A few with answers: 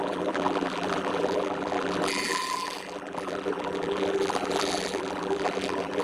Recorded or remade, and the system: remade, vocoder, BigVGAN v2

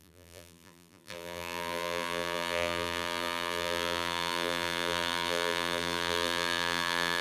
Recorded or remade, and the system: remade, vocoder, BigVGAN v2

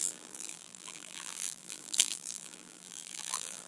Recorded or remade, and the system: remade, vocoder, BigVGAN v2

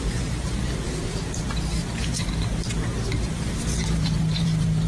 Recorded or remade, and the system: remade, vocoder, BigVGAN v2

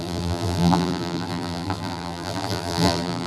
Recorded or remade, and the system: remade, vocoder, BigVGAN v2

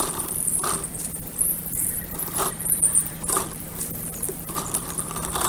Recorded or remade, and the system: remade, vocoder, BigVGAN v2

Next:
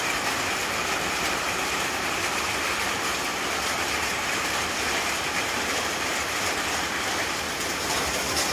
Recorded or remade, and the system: remade, vocoder, BigVGAN v2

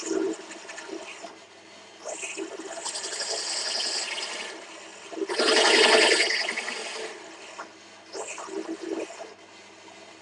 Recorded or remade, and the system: recorded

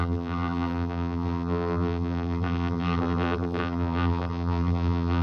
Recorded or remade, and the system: remade, vocoder, BigVGAN v2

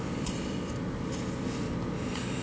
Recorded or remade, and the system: recorded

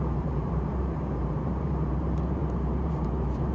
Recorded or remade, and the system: remade, vocoder, BigVGAN v2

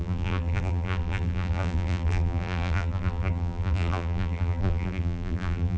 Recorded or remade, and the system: remade, vocoder, BigVGAN v2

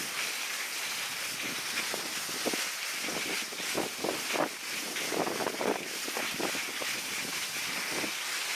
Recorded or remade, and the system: recorded